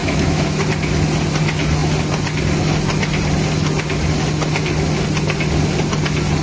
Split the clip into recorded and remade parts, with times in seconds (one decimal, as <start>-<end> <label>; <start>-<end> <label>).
0.0-0.7 remade; 0.7-6.4 recorded

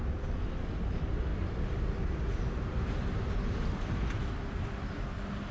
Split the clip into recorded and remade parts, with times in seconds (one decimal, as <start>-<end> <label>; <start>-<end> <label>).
0.0-5.5 recorded

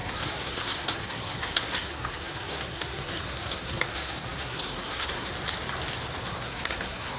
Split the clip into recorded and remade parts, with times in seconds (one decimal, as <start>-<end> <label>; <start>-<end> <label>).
0.0-5.3 remade; 5.3-6.2 recorded; 6.2-7.2 remade

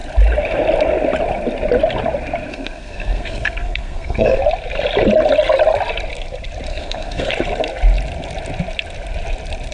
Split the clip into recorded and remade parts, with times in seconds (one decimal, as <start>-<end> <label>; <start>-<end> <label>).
0.0-2.5 recorded; 2.5-4.4 remade; 4.4-6.7 recorded; 6.7-7.3 remade; 7.3-9.7 recorded

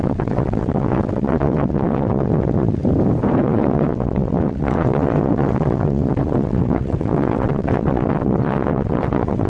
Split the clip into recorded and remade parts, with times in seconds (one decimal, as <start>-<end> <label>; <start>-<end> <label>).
0.0-2.8 remade; 2.8-3.4 recorded; 3.4-9.5 remade

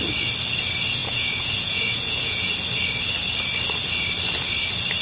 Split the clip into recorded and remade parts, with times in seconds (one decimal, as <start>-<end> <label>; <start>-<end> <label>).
0.0-1.0 recorded; 1.0-2.5 remade; 2.5-5.0 recorded